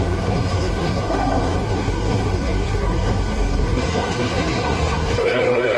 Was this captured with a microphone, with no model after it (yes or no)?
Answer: no